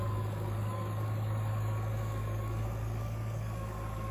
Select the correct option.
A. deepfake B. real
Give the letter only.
A